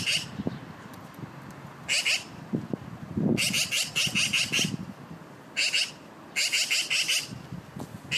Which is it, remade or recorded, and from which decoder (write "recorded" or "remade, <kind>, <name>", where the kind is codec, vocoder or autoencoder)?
recorded